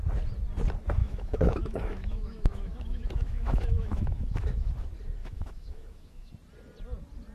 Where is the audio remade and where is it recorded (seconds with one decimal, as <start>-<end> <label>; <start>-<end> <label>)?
0.0-1.0 recorded; 1.0-4.7 remade; 4.7-5.2 recorded; 5.2-6.3 remade; 6.3-7.3 recorded